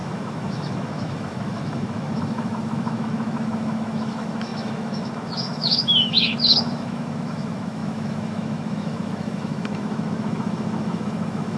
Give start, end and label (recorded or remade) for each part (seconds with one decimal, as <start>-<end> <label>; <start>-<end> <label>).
0.0-11.6 remade